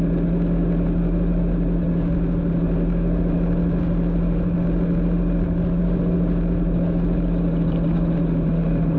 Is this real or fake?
real